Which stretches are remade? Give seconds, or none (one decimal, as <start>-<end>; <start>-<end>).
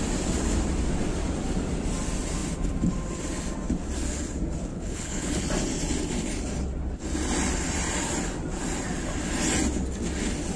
4.7-5.4